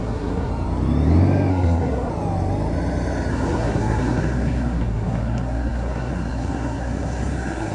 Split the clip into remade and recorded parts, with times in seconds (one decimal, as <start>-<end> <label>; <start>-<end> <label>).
0.0-0.5 remade; 0.5-1.5 recorded; 1.5-2.1 remade; 2.1-3.3 recorded; 3.3-7.7 remade